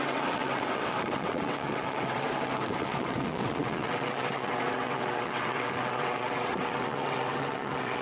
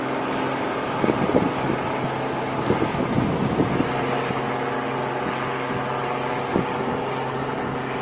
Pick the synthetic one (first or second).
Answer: first